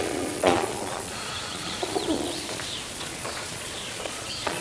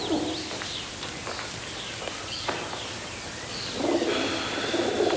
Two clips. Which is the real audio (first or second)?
second